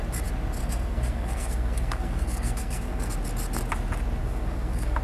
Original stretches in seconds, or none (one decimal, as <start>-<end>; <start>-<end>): 0.0-0.6; 3.1-4.2